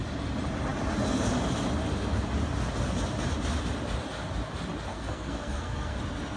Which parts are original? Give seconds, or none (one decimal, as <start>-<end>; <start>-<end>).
0.0-4.9; 6.0-6.4